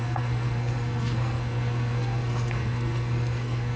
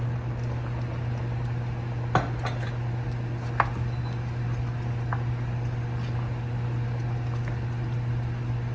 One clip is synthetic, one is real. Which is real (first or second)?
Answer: second